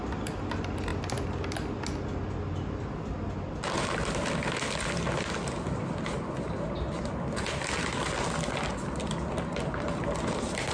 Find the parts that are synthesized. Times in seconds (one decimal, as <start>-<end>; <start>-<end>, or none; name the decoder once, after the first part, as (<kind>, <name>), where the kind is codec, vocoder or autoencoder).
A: none